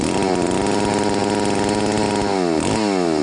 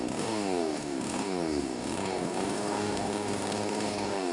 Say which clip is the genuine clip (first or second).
first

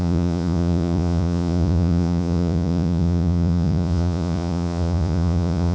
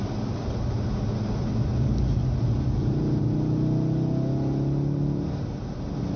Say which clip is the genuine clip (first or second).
second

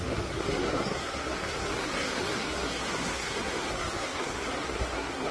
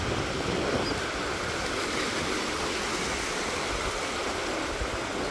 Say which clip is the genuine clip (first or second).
second